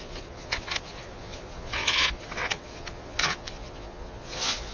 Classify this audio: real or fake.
fake